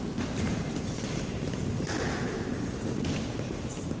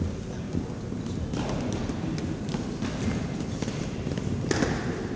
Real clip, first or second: second